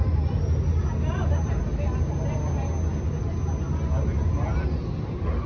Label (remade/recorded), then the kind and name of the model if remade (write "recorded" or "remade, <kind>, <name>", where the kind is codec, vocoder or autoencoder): recorded